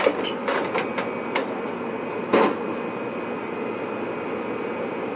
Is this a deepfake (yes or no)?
no